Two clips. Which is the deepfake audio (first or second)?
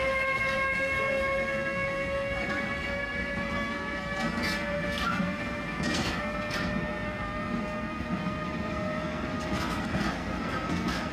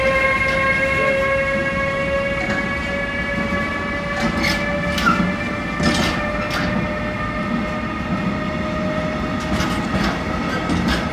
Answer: first